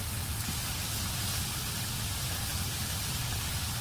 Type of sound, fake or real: real